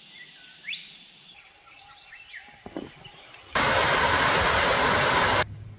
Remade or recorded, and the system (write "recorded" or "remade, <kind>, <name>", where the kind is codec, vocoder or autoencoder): recorded